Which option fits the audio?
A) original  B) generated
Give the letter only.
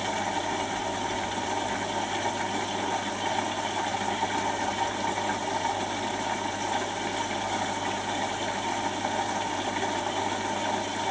A